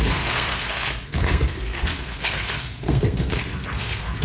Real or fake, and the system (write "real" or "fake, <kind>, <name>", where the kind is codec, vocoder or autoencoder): fake, codec, SNAC